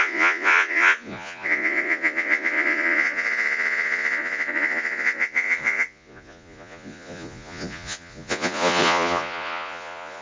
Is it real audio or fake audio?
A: fake